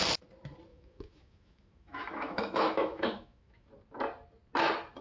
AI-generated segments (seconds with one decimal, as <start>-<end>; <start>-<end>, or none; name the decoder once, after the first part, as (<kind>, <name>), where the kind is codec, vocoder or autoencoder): 0.7-3.7 (autoencoder, DAC-VAE)